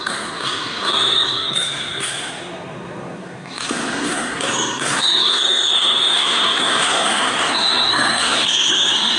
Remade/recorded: remade